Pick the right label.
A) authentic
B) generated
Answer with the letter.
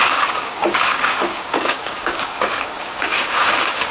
B